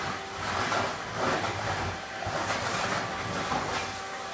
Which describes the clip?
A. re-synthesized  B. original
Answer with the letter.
B